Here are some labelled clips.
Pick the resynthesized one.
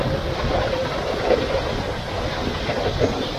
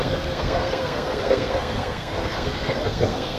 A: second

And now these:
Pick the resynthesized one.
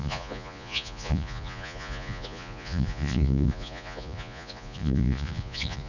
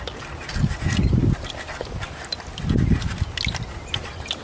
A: first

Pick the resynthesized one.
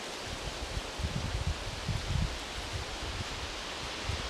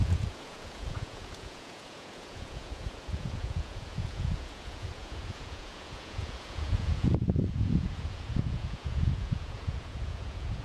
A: second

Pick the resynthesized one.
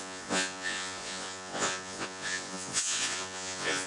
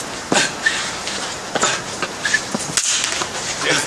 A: first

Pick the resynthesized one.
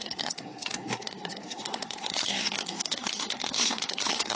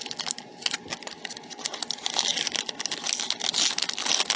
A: first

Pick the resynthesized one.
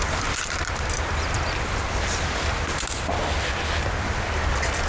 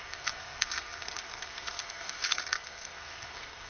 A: second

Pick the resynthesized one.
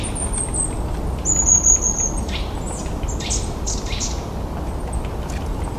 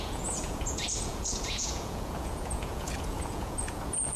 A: second